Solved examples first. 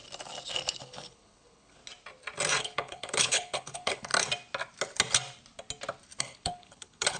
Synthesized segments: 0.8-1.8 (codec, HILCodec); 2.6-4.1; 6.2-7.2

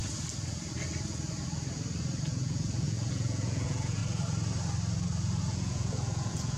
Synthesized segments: 2.2-4.0 (vocoder, Vocos); 5.4-6.6

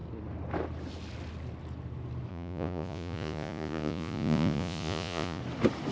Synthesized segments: 2.3-5.4 (vocoder, Vocos)

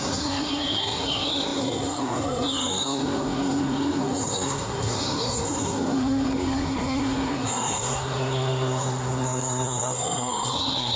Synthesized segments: 0.0-11.0 (codec, SNAC)

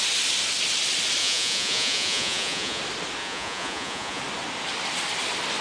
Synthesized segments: 1.2-2.8 (vocoder, Vocos); 3.2-4.2